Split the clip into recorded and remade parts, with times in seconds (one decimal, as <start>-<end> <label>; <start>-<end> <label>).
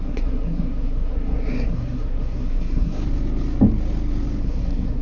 0.0-3.0 remade; 3.0-4.4 recorded; 4.4-5.0 remade